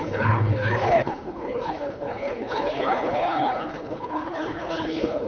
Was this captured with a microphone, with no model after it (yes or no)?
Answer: no